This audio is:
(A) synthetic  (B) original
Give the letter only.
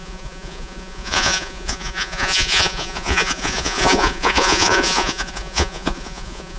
A